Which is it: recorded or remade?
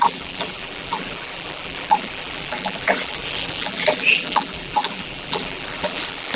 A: remade